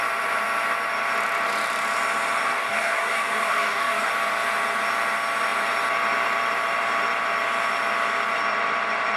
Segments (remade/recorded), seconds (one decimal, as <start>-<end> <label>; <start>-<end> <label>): 0.0-2.4 recorded; 2.4-4.1 remade; 4.1-9.2 recorded